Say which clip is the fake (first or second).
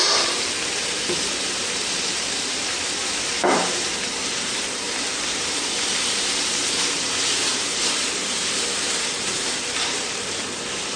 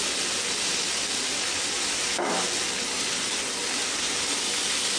first